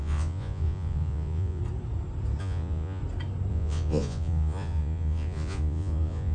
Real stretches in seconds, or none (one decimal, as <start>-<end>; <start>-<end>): 1.6-2.4; 3.0-3.5